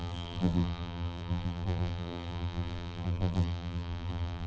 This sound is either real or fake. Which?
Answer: fake